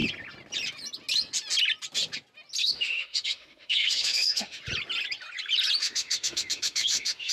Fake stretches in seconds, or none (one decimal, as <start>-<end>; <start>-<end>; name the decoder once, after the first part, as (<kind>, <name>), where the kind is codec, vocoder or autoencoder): 2.6-4.6 (autoencoder, DAC-VAE); 5.8-7.3